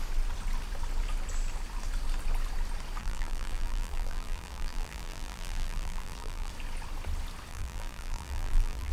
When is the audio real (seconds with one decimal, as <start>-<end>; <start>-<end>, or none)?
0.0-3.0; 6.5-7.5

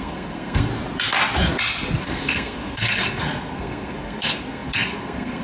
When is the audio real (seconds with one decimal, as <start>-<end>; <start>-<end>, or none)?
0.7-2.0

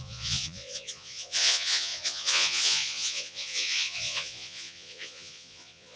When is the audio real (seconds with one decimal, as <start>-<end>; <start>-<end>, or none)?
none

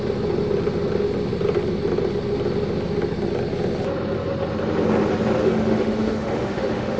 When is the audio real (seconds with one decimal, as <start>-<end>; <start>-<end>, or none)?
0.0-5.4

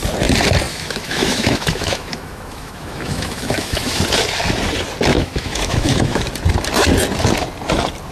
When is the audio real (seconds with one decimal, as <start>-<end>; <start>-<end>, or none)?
0.0-0.7; 4.0-5.1; 6.2-8.1

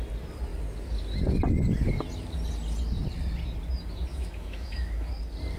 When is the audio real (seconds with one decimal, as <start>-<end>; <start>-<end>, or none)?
0.0-4.1; 5.1-5.6

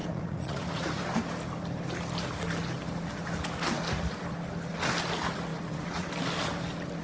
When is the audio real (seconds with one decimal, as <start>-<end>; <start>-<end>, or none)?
1.0-5.5; 6.1-7.0

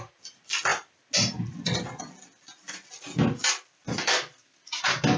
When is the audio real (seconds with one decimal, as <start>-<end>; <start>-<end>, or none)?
0.0-5.2